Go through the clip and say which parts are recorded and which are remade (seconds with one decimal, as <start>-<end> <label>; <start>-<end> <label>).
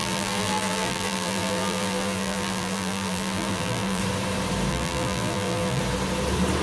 0.0-4.0 remade; 4.0-4.7 recorded; 4.7-5.8 remade; 5.8-6.6 recorded